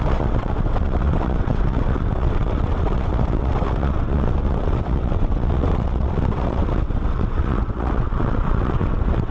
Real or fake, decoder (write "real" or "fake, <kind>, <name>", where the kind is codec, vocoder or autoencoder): fake, vocoder, WaveNeXt